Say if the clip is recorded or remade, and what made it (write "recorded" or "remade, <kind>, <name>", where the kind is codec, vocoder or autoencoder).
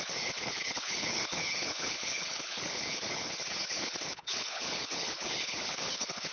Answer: remade, codec, HILCodec